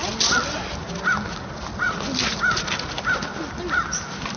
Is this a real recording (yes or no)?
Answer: yes